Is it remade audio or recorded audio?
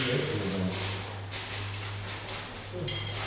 recorded